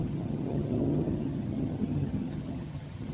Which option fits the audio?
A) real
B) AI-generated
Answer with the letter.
B